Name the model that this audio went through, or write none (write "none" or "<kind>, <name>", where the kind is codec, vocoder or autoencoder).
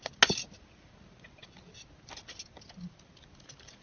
none